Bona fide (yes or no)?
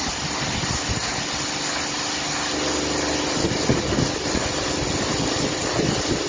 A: yes